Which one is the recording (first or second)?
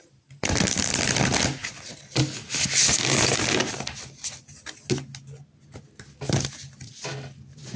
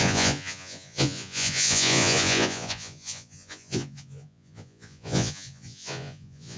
first